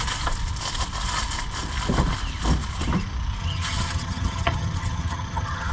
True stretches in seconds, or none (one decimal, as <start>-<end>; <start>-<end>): 0.0-3.4